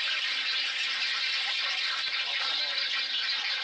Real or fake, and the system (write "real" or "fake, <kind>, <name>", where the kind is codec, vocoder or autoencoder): real